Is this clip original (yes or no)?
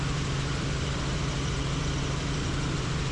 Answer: no